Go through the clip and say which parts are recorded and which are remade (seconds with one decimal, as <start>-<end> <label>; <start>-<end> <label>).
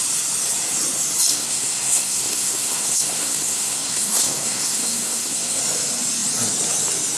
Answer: 0.0-1.3 recorded; 1.3-5.6 remade; 5.6-7.2 recorded